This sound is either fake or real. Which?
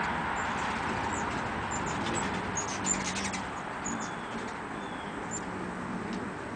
real